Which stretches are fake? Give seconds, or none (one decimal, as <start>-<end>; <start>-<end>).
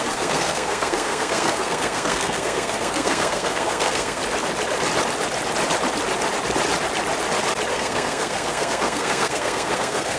0.0-4.2; 7.7-10.2